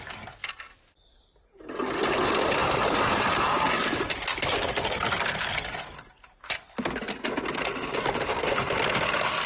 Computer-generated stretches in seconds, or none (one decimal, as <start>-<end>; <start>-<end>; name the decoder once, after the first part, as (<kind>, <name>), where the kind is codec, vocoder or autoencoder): none